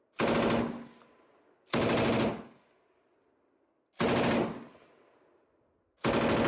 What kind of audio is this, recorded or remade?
recorded